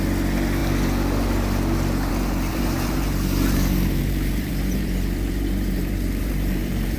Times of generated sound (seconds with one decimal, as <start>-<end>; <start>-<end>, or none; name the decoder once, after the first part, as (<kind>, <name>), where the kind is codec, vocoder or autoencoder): 2.5-7.0 (vocoder, BigVGAN v2)

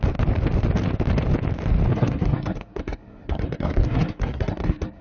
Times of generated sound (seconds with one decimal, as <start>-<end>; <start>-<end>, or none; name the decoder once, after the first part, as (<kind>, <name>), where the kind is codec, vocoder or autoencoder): 1.9-5.0 (codec, SNAC)

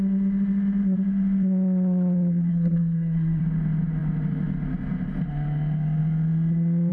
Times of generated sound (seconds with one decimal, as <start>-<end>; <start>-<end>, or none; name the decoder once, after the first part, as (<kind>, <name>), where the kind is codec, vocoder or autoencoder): 2.5-3.4 (codec, SNAC)

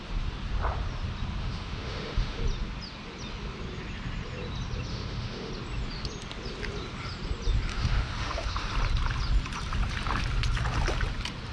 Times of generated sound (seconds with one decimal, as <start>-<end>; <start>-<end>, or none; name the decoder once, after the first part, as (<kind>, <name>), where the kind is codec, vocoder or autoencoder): 1.4-2.4 (autoencoder, DAC-VAE); 4.9-5.5; 7.7-8.7

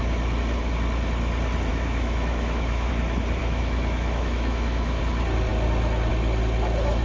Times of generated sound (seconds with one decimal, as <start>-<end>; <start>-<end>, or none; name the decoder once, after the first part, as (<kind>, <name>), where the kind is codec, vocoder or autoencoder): 1.7-2.9 (autoencoder, DAC-VAE); 3.4-5.0